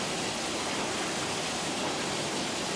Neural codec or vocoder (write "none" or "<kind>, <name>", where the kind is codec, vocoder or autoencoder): none